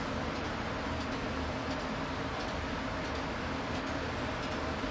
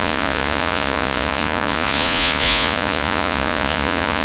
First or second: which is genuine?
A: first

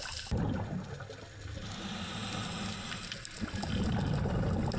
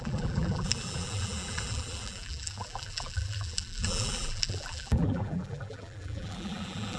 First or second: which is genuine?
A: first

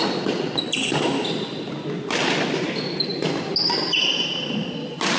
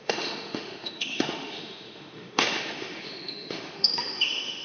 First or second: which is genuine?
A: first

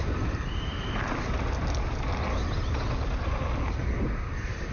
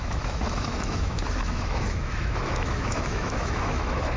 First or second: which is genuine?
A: first